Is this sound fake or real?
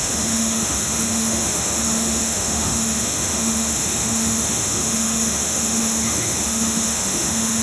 fake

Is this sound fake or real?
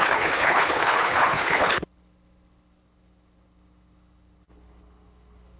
fake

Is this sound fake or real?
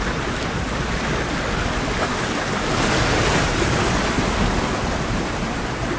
real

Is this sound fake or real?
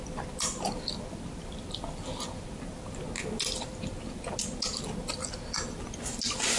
real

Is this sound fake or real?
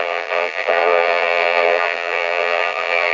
fake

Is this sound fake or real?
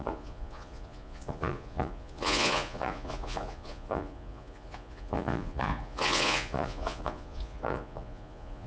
fake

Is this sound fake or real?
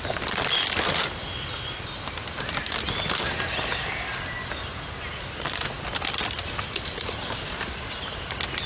real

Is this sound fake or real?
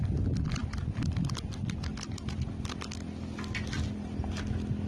real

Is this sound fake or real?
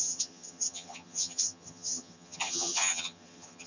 fake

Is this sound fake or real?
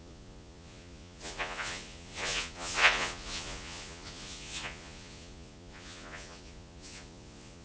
fake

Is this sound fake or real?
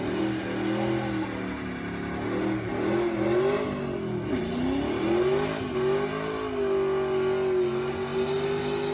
real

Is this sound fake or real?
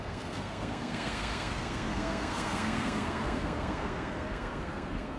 fake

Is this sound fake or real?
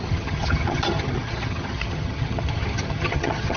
fake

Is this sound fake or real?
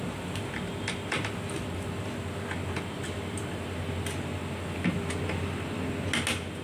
real